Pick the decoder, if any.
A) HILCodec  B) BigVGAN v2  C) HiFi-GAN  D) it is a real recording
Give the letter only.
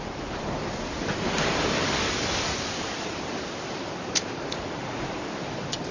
D